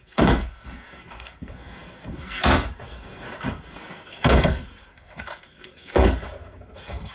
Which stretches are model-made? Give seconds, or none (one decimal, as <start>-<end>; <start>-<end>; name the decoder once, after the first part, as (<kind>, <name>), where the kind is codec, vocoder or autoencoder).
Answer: 0.0-7.1 (codec, SNAC)